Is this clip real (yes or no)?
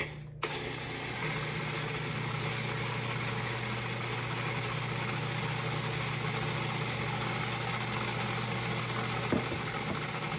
yes